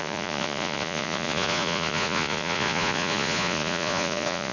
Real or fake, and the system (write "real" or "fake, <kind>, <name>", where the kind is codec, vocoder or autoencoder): fake, vocoder, Vocos